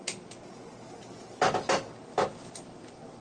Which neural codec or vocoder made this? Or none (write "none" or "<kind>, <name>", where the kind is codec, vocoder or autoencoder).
none